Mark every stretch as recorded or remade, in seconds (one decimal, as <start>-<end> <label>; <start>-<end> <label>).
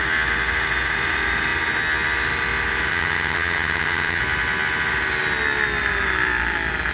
0.0-2.9 recorded; 2.9-4.2 remade; 4.2-6.9 recorded